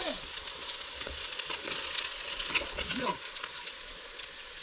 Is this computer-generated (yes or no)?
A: yes